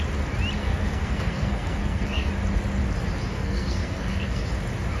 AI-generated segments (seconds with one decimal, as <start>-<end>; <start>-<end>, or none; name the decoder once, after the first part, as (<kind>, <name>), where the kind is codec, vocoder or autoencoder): 0.6-2.3 (codec, SNAC); 3.3-4.4